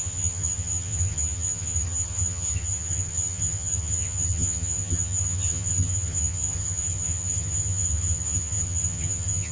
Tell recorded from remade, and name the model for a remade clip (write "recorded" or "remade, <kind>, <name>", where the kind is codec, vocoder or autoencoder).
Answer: remade, vocoder, HiFi-GAN